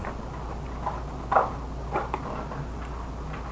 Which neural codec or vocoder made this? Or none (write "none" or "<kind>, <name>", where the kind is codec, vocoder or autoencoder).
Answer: none